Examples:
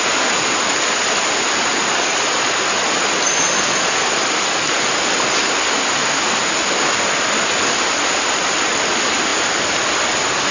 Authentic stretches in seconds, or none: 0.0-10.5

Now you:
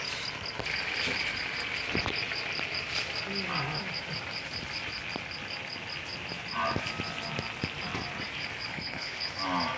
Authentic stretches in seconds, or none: 0.0-8.7; 9.3-9.8

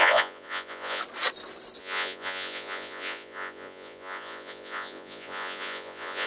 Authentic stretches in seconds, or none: 1.0-1.8

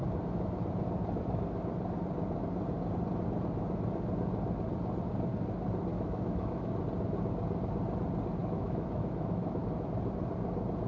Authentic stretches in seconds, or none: 0.0-5.9; 6.7-8.4; 9.6-10.9

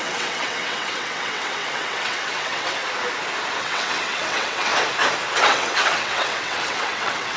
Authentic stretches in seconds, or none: 2.8-3.6; 4.7-5.3

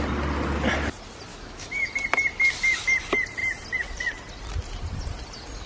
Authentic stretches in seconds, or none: 0.0-1.3; 1.9-5.7

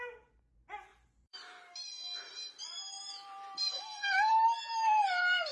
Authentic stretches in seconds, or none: none

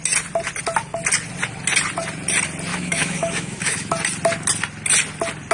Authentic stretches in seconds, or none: 0.0-2.7; 3.9-5.5